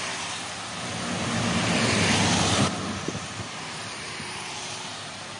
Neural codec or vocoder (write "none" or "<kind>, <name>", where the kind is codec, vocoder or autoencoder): vocoder, BigVGAN v2